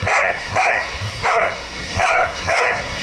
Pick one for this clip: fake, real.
fake